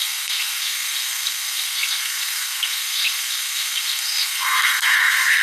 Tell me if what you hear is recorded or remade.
remade